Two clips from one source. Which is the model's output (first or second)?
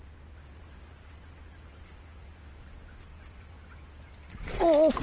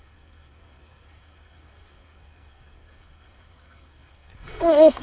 second